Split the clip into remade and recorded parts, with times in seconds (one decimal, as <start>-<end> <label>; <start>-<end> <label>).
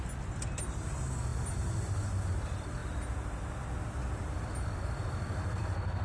0.0-6.0 recorded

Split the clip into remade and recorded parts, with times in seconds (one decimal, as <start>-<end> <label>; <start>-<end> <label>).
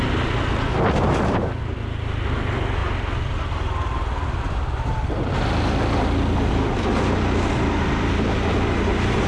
0.0-9.3 recorded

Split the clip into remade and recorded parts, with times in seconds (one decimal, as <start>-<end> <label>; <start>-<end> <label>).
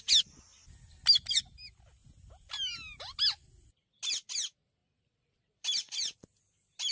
0.0-4.8 recorded; 4.8-6.4 remade; 6.4-6.9 recorded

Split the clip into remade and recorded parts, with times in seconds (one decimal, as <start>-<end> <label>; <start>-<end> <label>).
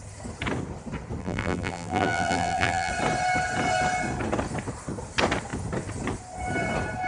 0.0-1.2 recorded; 1.2-2.9 remade; 2.9-7.1 recorded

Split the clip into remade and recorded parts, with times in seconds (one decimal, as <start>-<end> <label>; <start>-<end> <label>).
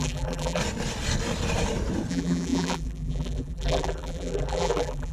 0.0-0.6 remade; 0.6-2.1 recorded; 2.1-5.1 remade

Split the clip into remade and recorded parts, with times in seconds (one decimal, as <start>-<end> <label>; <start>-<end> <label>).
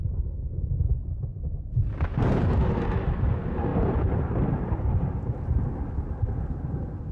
0.0-3.7 recorded; 3.7-5.8 remade; 5.8-7.1 recorded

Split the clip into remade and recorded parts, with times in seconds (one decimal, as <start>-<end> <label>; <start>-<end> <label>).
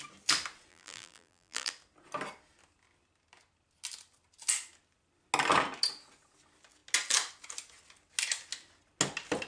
0.0-0.7 recorded; 0.7-1.7 remade; 1.7-9.5 recorded